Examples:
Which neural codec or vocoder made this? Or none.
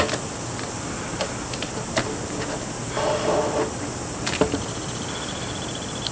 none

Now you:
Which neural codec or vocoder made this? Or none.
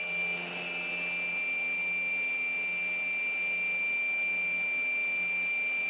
none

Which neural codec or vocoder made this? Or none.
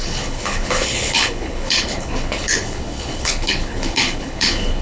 codec, HILCodec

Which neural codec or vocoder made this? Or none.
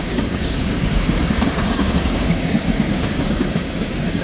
codec, DAC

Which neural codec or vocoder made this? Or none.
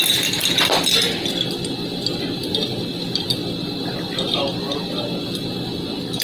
none